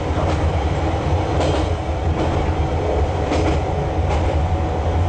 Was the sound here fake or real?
real